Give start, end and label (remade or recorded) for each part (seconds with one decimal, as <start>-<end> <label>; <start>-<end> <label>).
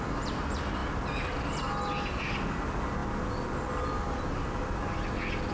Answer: 0.0-5.5 recorded